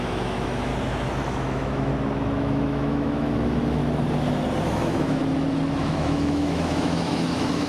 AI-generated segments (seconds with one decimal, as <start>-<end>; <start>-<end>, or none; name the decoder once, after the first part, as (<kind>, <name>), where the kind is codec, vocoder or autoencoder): 0.0-0.7 (autoencoder, DAC-VAE); 1.3-1.9; 2.4-3.8; 4.6-5.2; 5.8-7.7

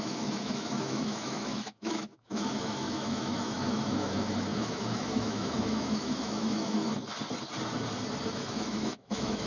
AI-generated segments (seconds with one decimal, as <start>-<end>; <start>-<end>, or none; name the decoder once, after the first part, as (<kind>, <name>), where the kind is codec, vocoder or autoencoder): 0.0-6.9 (autoencoder, DAC-VAE); 8.3-9.5